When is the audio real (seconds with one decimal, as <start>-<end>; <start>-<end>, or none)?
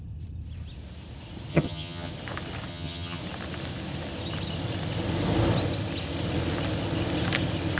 0.0-1.5; 2.1-2.7; 3.2-7.8